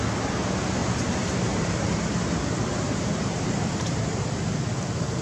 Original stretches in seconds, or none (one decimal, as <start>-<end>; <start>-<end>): 0.0-0.8; 3.6-5.2